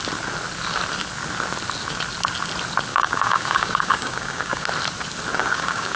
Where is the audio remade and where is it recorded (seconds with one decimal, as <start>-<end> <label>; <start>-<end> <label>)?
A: 0.0-2.9 recorded; 2.9-4.7 remade; 4.7-5.3 recorded; 5.3-6.0 remade